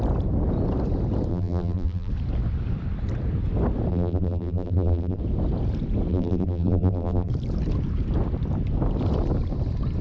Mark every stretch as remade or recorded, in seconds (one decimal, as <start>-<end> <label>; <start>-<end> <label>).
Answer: 0.0-1.3 recorded; 1.3-2.1 remade; 2.1-3.9 recorded; 3.9-5.2 remade; 5.2-6.1 recorded; 6.1-7.3 remade; 7.3-10.0 recorded